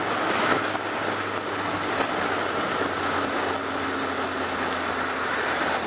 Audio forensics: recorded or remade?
recorded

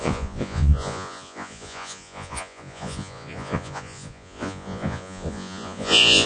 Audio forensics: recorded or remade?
remade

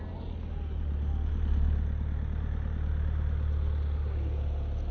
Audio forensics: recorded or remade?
recorded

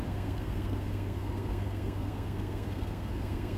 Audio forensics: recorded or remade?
remade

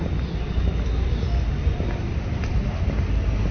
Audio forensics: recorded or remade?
recorded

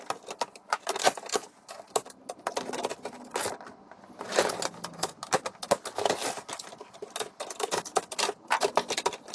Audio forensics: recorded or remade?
recorded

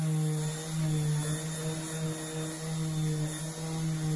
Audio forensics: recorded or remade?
recorded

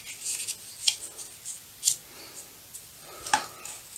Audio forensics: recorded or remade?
recorded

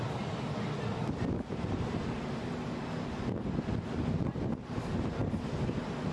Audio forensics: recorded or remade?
recorded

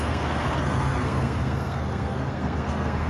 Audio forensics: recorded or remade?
remade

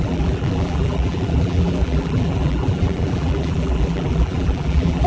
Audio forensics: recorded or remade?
remade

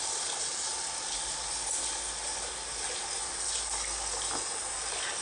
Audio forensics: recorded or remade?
recorded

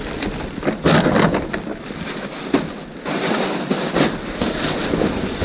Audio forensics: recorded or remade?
recorded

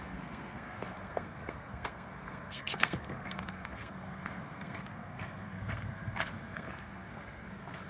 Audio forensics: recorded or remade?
remade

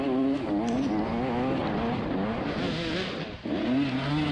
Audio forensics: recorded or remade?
recorded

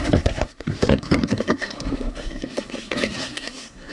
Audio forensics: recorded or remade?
remade